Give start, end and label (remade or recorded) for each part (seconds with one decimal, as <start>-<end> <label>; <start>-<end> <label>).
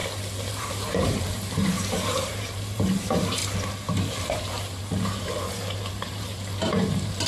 0.0-0.5 recorded; 0.5-3.4 remade; 3.4-4.1 recorded; 4.1-7.3 remade